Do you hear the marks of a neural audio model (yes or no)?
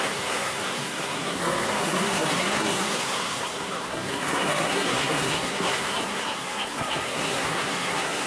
yes